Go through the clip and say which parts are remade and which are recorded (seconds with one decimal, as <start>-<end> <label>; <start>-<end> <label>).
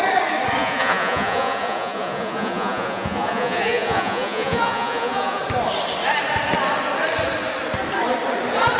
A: 0.0-0.6 recorded; 0.6-5.4 remade; 5.4-8.8 recorded